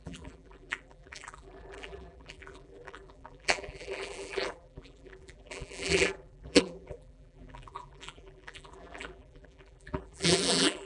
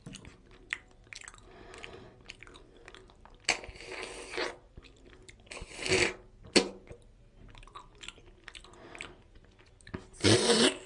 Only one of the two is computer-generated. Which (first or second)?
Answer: first